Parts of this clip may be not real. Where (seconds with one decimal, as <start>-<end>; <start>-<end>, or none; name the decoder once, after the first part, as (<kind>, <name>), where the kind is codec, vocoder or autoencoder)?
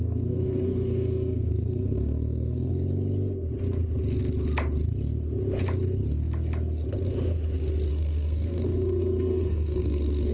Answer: 0.0-2.7 (codec, SNAC); 7.9-10.3